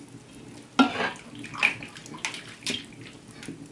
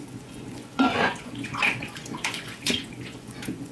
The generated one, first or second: second